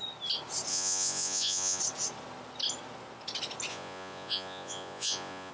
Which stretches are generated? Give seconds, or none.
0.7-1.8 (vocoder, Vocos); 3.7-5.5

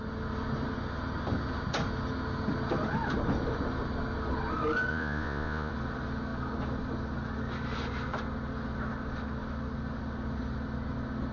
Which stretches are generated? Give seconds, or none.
4.9-5.7 (vocoder, Vocos)

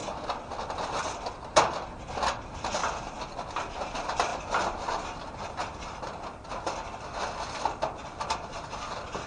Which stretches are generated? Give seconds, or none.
none